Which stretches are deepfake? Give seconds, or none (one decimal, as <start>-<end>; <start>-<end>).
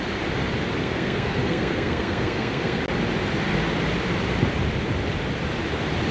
0.8-2.8